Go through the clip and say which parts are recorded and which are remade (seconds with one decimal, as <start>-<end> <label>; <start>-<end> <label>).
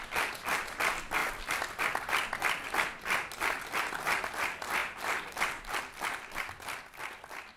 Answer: 0.0-7.6 recorded